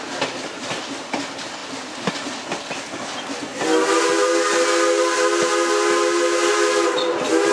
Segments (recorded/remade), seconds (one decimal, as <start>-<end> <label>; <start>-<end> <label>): 0.0-7.5 recorded